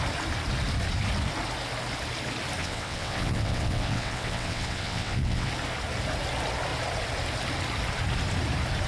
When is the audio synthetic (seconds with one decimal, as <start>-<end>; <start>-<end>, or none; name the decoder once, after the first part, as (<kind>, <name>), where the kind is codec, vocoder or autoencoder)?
2.6-5.5 (vocoder, WaveNeXt)